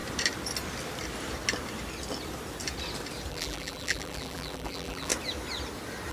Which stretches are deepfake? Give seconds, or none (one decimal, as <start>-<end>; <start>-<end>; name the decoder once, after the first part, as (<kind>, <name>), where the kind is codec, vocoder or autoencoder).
3.3-5.1 (vocoder, BigVGAN v2)